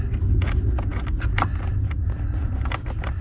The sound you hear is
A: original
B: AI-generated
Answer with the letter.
A